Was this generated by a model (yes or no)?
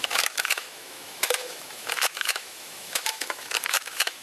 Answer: yes